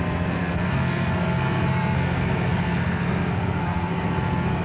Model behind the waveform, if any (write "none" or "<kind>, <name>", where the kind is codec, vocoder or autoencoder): codec, SNAC